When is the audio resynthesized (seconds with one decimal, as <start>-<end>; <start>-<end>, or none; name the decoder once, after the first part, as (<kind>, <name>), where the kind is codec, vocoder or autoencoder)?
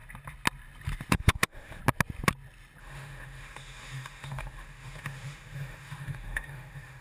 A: 1.1-1.8 (autoencoder, DAC-VAE); 2.8-7.0